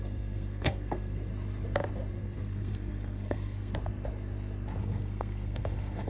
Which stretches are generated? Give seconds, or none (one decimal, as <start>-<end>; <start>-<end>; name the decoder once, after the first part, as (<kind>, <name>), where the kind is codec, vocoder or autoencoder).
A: 0.0-1.3 (codec, SNAC); 2.1-3.7; 4.8-6.1